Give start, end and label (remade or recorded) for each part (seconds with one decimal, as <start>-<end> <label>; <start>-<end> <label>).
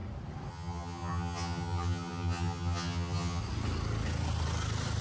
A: 0.0-0.5 recorded; 0.5-3.4 remade; 3.4-5.0 recorded